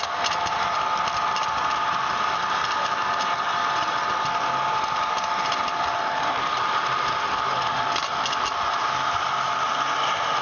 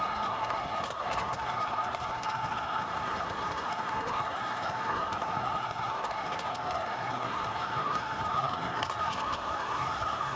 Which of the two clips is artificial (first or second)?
second